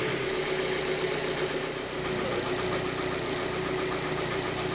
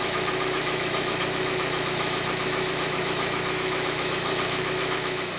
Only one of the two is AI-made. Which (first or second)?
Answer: second